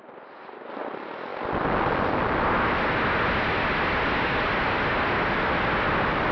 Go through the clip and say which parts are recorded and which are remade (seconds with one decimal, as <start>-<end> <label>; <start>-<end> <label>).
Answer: 0.0-6.3 recorded